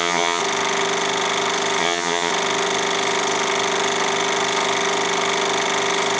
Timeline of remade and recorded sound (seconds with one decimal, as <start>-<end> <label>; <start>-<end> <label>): 0.0-0.4 remade; 0.4-1.8 recorded; 1.8-2.3 remade; 2.3-6.2 recorded